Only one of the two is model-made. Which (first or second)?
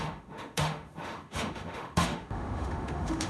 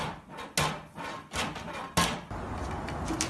first